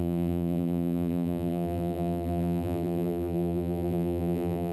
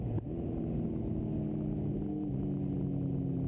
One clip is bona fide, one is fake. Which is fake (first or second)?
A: first